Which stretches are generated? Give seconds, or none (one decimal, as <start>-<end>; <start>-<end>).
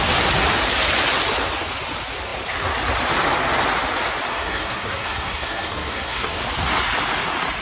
4.3-6.4